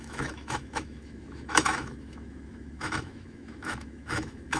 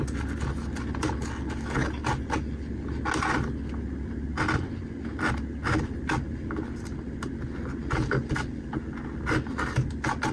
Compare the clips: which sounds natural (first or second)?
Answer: second